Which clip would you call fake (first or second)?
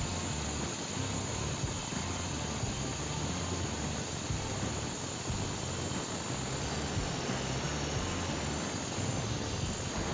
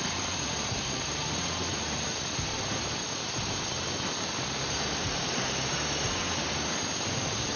second